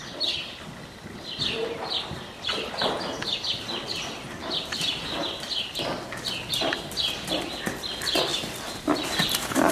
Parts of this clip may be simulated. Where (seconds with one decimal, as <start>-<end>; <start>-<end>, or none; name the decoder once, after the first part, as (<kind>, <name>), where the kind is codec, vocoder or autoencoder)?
1.6-3.0 (vocoder, BigVGAN v2); 8.3-9.7